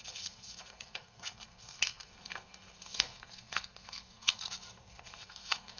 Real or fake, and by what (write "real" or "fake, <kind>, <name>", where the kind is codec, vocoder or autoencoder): fake, codec, SNAC